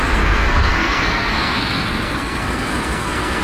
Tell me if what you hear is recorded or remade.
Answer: remade